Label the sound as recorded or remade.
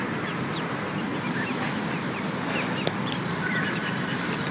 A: recorded